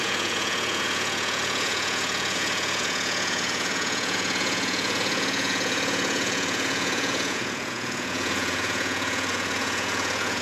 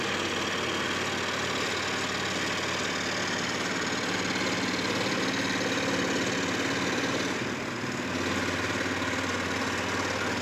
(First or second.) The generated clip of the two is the first